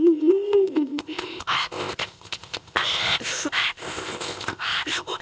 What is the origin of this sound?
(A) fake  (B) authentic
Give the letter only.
A